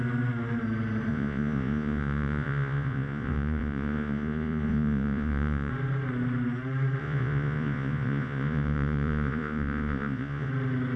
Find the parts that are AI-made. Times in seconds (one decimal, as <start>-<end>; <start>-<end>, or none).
1.1-5.7; 7.0-10.5